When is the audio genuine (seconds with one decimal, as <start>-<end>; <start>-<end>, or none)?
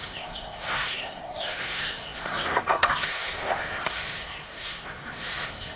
none